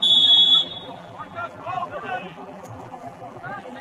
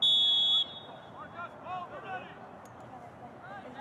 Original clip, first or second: second